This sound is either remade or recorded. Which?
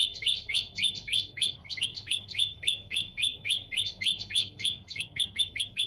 remade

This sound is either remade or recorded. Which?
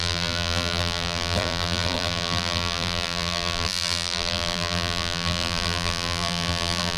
remade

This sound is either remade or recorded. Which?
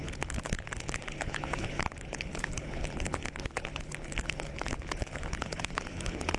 remade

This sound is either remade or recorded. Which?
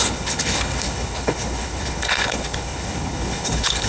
remade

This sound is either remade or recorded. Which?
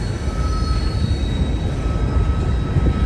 recorded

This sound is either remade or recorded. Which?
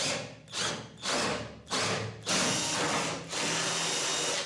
recorded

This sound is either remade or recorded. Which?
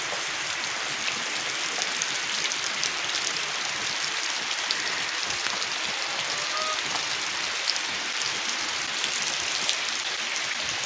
recorded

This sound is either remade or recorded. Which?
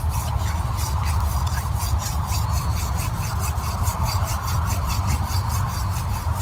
recorded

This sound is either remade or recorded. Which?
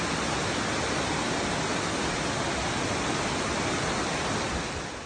recorded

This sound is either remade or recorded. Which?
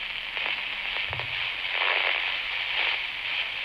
recorded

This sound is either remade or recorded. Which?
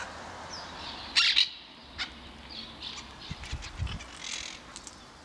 recorded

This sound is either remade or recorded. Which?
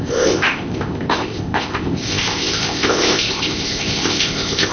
remade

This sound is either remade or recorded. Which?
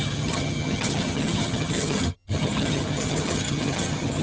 remade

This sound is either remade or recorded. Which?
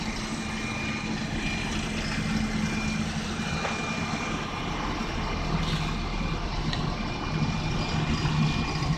recorded